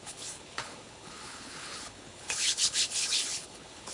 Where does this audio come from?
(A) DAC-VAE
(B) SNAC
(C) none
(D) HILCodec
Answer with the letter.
D